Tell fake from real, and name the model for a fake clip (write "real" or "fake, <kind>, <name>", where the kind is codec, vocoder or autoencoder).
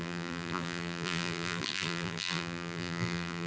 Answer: fake, vocoder, BigVGAN v2